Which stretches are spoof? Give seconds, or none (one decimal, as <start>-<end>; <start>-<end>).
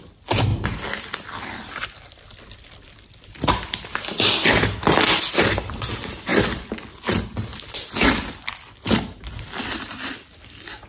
none